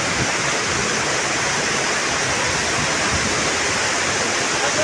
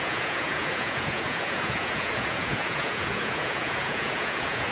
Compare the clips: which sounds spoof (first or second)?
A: second